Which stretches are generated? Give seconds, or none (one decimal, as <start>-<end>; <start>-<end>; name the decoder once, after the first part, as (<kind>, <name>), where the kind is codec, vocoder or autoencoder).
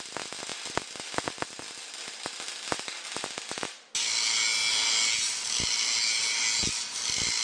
none